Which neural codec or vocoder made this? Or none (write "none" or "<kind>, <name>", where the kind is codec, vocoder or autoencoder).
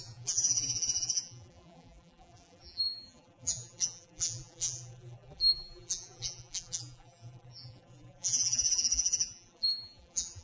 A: vocoder, BigVGAN v2